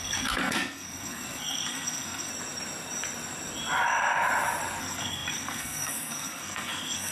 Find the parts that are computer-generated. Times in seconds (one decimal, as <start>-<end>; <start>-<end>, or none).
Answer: 0.0-2.3; 4.8-7.1